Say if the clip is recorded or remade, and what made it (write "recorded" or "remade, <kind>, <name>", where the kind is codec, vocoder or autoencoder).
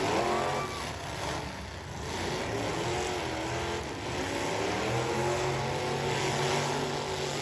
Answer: recorded